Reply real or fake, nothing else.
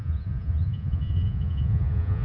fake